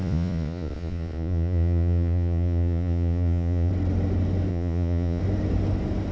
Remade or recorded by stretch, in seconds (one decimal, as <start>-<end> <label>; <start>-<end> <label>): 0.0-3.7 remade; 3.7-4.5 recorded; 4.5-5.2 remade; 5.2-6.1 recorded